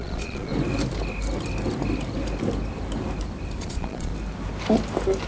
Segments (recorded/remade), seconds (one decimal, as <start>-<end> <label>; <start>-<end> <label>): 0.0-0.5 remade; 0.5-3.6 recorded; 3.6-4.1 remade; 4.1-5.3 recorded